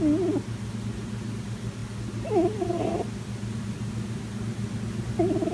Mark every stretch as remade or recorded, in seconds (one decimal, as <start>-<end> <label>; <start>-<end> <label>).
0.0-5.5 recorded